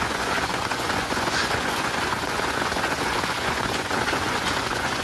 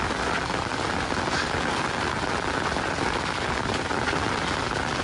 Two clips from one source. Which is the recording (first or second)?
second